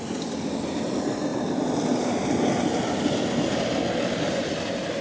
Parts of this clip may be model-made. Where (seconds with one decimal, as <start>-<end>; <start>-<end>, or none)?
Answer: none